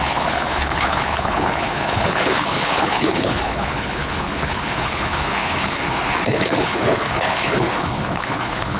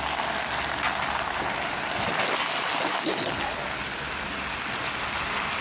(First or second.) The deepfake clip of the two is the first